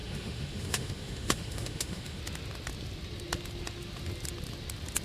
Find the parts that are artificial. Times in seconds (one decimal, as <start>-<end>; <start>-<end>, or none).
0.0-2.2